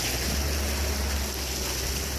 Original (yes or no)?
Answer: yes